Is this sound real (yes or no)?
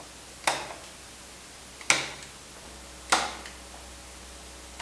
yes